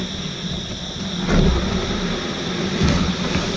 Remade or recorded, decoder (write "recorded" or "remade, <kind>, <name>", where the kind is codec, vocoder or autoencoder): recorded